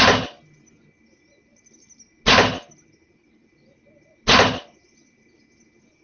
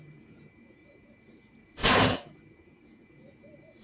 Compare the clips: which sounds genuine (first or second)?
first